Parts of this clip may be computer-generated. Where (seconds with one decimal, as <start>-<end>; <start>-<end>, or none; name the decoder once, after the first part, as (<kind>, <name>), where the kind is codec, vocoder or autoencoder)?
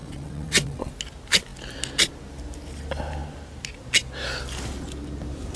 0.0-0.9 (vocoder, WaveNeXt)